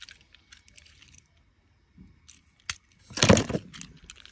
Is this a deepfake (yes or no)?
no